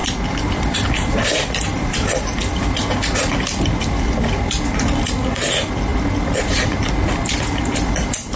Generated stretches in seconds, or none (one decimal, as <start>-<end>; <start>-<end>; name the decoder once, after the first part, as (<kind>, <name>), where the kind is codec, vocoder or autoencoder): none